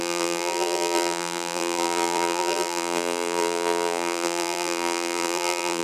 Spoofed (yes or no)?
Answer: yes